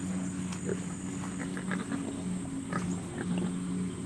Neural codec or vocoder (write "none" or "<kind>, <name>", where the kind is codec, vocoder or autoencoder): none